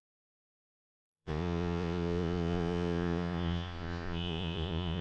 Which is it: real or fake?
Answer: fake